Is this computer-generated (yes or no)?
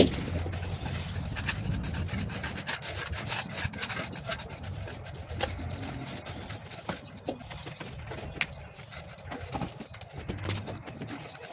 no